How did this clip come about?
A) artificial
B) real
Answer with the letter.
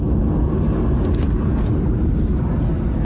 B